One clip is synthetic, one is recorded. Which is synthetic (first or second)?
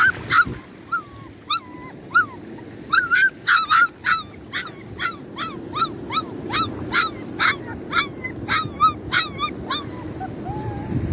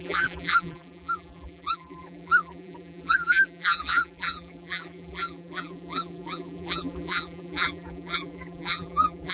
second